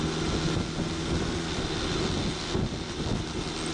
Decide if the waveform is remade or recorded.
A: recorded